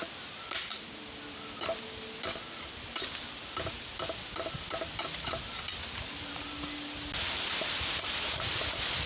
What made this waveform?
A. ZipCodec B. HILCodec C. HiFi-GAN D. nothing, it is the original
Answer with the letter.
D